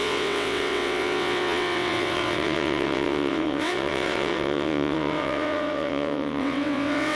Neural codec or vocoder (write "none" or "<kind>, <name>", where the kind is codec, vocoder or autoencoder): vocoder, WaveNeXt